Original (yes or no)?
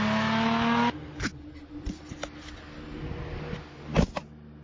yes